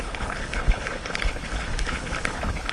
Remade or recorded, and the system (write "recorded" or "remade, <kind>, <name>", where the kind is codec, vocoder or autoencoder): remade, codec, HILCodec